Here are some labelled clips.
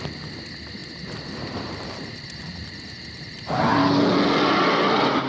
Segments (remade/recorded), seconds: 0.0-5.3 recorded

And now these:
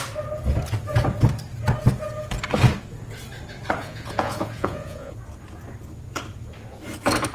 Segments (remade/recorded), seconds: 0.0-3.8 recorded; 3.8-5.2 remade; 5.2-7.3 recorded